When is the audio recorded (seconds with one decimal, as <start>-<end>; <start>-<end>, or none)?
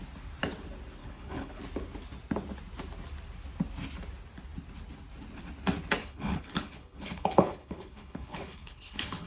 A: 0.0-1.0; 1.6-6.0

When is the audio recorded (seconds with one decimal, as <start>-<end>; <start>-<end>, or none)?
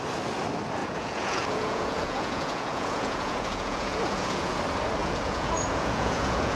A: 0.0-0.8; 4.6-5.0